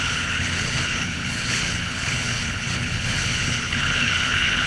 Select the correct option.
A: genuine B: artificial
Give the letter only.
B